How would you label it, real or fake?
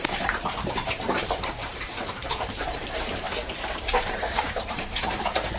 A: fake